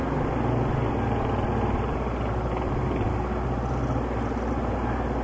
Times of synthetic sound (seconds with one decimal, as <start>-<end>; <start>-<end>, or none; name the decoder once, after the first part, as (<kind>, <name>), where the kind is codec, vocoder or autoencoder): 0.0-3.1 (vocoder, BigVGAN v2)